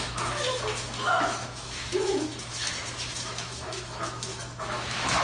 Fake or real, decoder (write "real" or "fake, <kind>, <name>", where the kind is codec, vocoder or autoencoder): fake, autoencoder, DAC-VAE